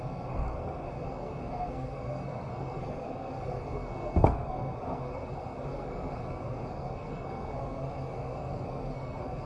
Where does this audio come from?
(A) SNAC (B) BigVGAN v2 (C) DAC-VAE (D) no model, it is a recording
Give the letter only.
A